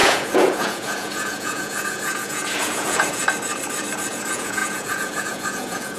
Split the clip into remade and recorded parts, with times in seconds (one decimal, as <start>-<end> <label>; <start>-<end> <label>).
0.0-3.2 remade; 3.2-4.1 recorded; 4.1-6.0 remade